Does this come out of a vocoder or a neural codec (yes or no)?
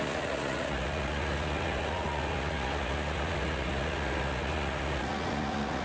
yes